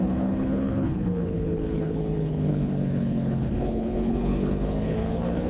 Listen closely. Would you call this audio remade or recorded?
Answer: remade